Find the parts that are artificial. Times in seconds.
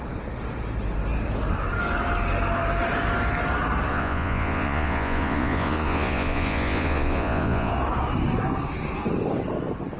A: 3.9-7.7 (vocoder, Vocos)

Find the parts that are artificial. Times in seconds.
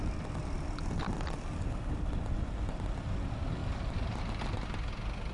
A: 0.0-0.4 (vocoder, BigVGAN v2); 1.0-3.6; 4.2-5.3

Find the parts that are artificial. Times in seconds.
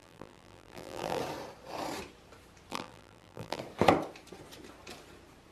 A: 0.0-1.2 (vocoder, BigVGAN v2); 2.7-3.6